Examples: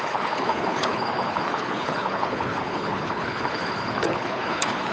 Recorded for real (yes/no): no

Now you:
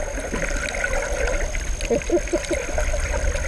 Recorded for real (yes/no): yes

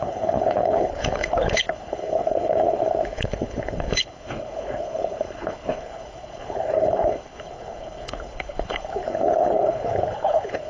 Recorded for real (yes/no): no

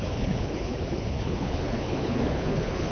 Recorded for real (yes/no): no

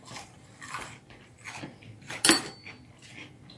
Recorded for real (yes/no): yes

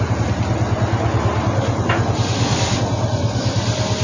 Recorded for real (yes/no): yes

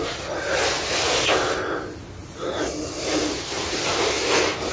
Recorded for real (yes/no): yes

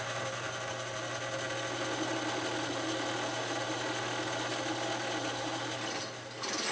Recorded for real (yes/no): yes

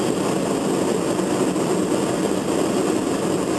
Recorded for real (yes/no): yes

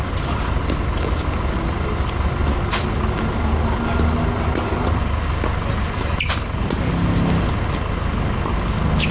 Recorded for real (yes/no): yes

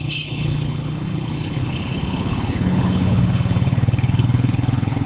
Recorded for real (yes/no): no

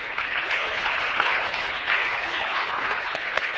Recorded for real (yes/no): no